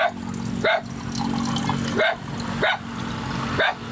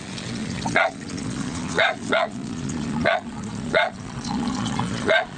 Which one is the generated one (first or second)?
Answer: second